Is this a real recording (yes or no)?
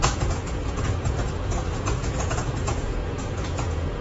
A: no